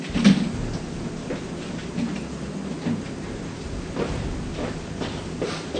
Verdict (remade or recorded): recorded